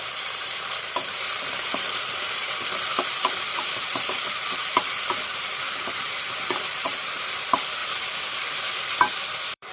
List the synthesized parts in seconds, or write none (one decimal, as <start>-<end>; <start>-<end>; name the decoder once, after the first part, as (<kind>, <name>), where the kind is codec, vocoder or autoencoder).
0.0-9.7 (vocoder, BigVGAN v2)